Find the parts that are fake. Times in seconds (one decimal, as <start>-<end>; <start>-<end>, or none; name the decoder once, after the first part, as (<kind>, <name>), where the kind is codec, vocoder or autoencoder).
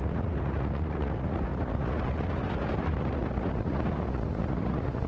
0.0-5.1 (vocoder, Vocos)